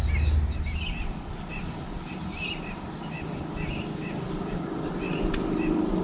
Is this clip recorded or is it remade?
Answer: recorded